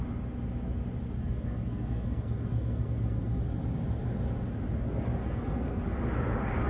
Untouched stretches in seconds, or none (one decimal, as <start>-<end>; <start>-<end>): 0.0-1.2; 3.4-5.2; 5.8-6.7